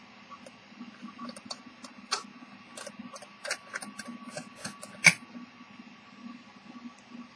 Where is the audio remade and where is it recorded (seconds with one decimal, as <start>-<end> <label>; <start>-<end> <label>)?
0.0-7.4 recorded